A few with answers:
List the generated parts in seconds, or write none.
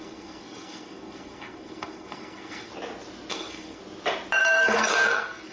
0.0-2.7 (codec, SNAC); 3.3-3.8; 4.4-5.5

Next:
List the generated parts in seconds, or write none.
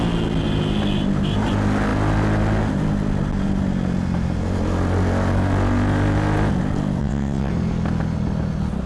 7.0-7.5 (vocoder, WaveNeXt)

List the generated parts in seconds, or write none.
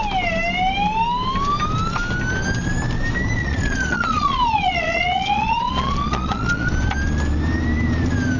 3.4-6.7 (vocoder, Vocos)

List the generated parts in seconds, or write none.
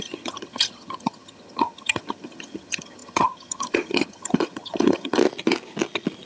0.0-5.2 (vocoder, HiFi-GAN)